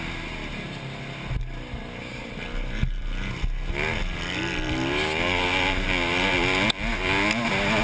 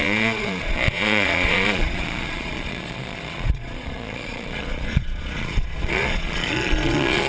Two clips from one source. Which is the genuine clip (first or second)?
first